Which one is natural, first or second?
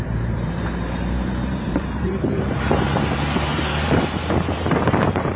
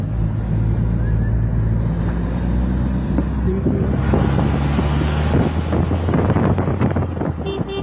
second